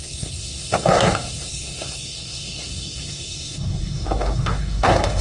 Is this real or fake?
fake